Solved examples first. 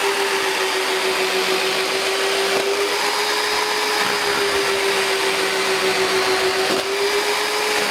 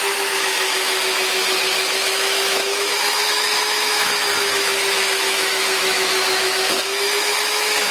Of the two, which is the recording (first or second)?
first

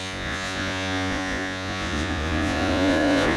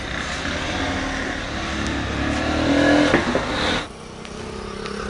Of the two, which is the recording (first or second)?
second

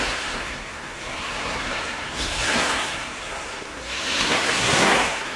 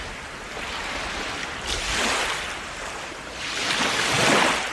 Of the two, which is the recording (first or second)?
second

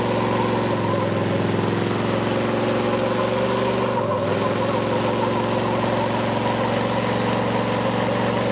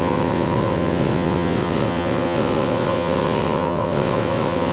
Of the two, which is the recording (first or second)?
first